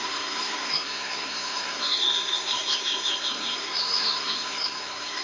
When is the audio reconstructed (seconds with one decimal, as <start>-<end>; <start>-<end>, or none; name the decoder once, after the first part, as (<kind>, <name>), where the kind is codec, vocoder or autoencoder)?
0.0-5.2 (codec, SNAC)